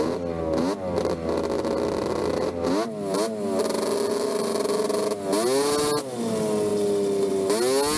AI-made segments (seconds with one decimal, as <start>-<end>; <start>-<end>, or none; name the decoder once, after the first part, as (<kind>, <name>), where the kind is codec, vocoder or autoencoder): none